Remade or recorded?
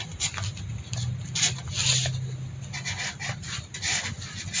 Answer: recorded